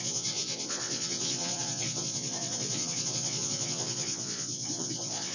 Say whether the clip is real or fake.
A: fake